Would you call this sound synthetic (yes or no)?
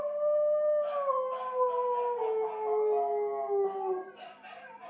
no